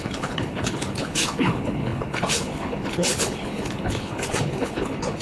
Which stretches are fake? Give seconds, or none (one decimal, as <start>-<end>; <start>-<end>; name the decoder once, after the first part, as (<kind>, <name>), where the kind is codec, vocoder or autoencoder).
0.0-5.2 (codec, HILCodec)